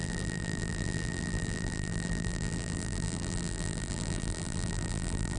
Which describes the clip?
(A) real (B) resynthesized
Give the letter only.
B